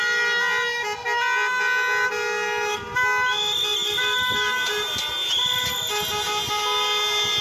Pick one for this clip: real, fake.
real